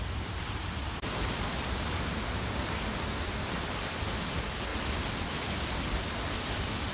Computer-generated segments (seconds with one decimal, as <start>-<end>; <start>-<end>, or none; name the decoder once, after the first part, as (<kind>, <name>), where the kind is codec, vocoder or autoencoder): none